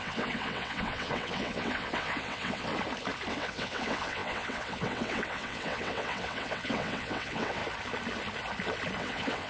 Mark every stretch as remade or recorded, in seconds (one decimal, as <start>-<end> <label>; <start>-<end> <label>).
0.0-2.7 remade; 2.7-3.3 recorded; 3.3-7.6 remade; 7.6-9.0 recorded; 9.0-9.5 remade